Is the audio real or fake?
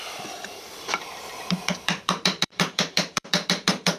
fake